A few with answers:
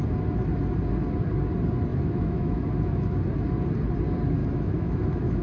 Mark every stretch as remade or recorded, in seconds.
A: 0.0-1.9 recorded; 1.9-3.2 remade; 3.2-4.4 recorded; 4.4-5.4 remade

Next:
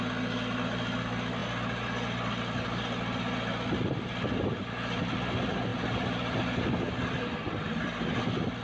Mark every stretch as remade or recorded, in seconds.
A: 0.0-8.6 recorded

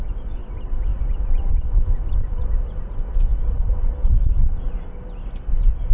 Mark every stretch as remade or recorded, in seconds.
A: 0.0-0.9 recorded; 0.9-1.5 remade; 1.5-5.9 recorded